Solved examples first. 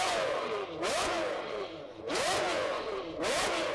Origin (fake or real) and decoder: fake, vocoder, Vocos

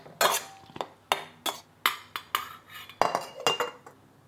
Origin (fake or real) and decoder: real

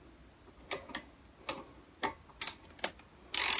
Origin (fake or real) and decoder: real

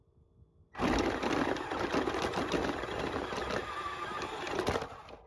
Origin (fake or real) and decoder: real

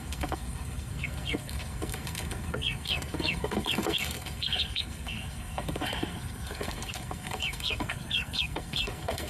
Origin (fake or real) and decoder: fake, codec, SNAC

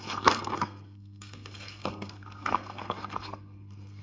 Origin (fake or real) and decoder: fake, codec, SNAC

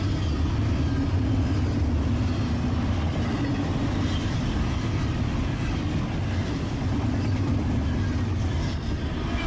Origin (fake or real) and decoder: real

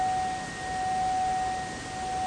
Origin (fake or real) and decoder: real